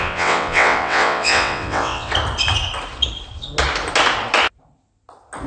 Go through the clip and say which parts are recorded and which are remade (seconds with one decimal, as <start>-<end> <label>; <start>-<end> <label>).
0.0-2.1 remade; 2.1-5.5 recorded